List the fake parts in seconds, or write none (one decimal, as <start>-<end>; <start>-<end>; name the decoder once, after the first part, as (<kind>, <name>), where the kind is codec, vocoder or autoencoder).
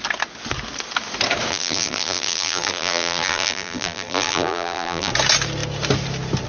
1.5-5.1 (vocoder, BigVGAN v2)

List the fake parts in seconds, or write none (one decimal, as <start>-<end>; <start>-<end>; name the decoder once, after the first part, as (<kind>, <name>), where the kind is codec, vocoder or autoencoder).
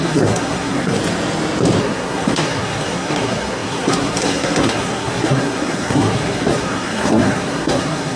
0.0-1.0 (codec, SNAC); 1.8-8.2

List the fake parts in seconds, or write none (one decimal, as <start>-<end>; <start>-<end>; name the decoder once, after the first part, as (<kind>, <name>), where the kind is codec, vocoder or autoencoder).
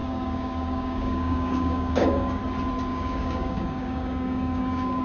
0.0-2.4 (codec, DAC); 2.9-5.0